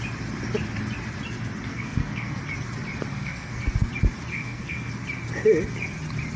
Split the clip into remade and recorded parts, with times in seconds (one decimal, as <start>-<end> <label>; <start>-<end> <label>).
0.0-1.7 recorded; 1.7-2.4 remade; 2.4-3.1 recorded; 3.1-3.7 remade; 3.7-4.3 recorded; 4.3-4.9 remade; 4.9-6.4 recorded